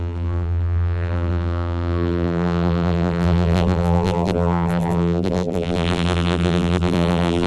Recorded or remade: remade